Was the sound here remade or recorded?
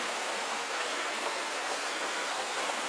remade